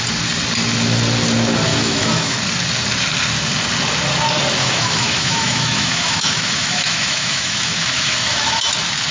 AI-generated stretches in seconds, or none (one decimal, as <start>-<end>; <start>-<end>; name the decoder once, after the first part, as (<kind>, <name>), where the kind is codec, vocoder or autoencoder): 1.7-2.4 (autoencoder, DAC-VAE); 4.6-8.6

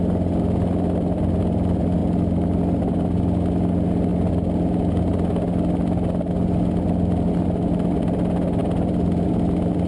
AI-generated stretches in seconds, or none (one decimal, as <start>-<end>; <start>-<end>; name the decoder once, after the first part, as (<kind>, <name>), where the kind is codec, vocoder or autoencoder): none

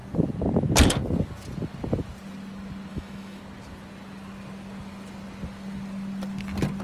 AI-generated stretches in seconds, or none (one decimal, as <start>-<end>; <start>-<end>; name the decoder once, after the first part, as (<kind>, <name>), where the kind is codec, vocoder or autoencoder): 2.9-3.4 (autoencoder, DAC-VAE)

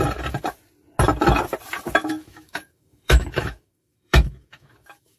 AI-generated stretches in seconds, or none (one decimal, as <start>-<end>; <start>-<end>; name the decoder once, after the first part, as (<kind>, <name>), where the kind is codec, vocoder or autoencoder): 2.0-5.2 (autoencoder, DAC-VAE)

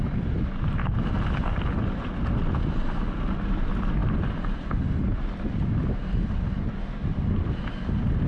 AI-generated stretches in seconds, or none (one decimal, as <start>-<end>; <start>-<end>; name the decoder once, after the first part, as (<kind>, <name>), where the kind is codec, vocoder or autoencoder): none

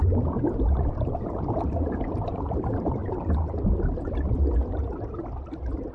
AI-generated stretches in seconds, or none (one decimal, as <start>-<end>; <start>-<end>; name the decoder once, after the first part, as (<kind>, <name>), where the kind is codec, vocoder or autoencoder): none